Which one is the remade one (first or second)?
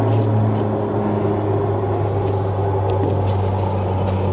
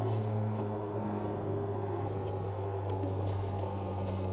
second